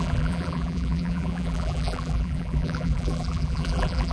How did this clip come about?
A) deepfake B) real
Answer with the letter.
A